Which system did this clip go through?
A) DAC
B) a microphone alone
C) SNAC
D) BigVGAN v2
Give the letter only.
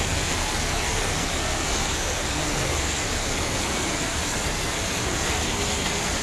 C